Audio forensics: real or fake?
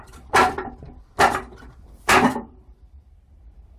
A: fake